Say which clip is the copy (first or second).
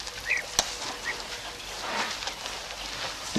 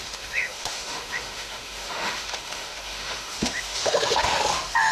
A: second